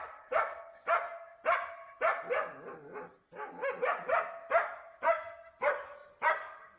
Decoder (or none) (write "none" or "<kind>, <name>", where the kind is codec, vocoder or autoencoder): none